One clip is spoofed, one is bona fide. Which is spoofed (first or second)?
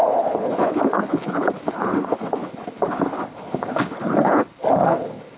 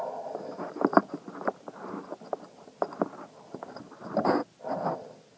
first